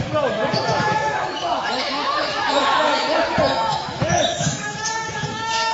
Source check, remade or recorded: remade